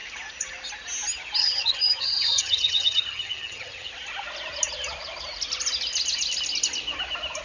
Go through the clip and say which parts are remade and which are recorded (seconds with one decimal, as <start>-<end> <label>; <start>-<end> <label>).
0.0-1.4 recorded; 1.4-3.9 remade; 3.9-7.4 recorded